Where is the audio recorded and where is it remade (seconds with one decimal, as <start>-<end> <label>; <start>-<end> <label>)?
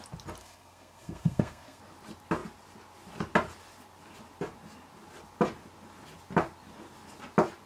0.0-0.4 recorded; 0.4-1.8 remade; 1.8-7.7 recorded